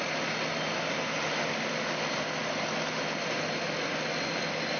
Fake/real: real